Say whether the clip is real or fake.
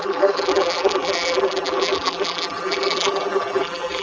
fake